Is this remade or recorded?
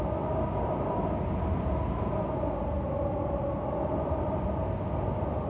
recorded